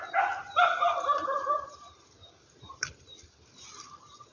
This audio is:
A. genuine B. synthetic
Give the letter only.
B